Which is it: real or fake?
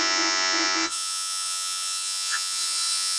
fake